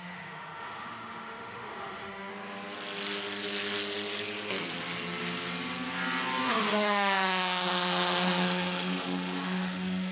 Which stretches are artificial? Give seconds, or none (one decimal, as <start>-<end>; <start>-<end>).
0.0-2.3; 6.5-10.1